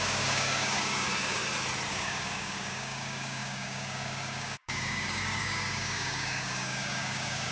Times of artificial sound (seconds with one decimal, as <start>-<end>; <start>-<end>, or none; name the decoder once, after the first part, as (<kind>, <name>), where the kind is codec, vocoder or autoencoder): 0.0-1.4 (codec, DAC); 1.9-7.5